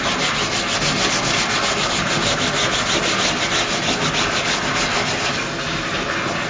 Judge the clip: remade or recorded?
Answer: recorded